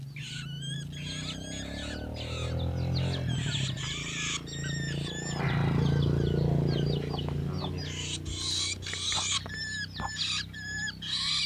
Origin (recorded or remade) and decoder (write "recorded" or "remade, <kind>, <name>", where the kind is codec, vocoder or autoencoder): recorded